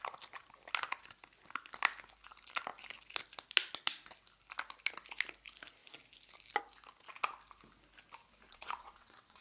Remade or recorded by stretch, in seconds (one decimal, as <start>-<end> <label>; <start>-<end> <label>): 0.0-8.5 recorded; 8.5-9.4 remade

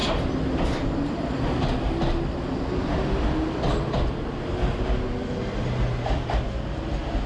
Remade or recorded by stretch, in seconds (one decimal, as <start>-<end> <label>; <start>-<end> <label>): 0.0-7.3 recorded

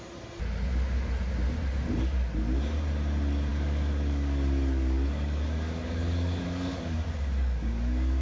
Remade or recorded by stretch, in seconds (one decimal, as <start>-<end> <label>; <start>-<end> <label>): 0.0-3.5 recorded; 3.5-8.2 remade

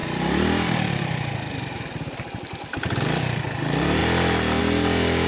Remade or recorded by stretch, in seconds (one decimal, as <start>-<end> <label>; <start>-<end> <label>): 0.0-3.2 remade; 3.2-5.3 recorded

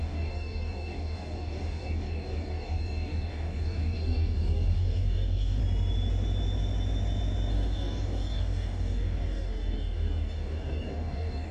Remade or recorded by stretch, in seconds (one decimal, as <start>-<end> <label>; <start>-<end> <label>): 0.0-5.6 remade; 5.6-7.5 recorded; 7.5-11.5 remade

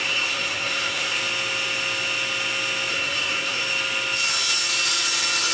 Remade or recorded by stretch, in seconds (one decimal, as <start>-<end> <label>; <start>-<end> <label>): 0.0-1.2 remade; 1.2-2.9 recorded; 2.9-3.6 remade; 3.6-5.5 recorded